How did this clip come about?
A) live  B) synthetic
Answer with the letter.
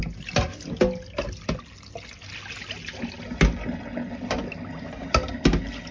A